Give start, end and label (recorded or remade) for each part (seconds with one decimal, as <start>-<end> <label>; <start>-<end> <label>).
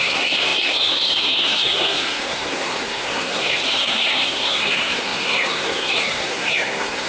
0.0-7.1 remade